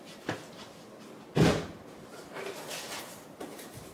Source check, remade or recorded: recorded